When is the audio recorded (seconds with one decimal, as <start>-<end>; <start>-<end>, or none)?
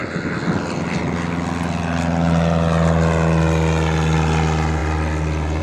0.0-5.6